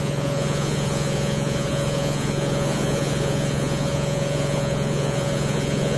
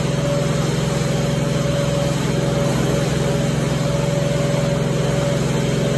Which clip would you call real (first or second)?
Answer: second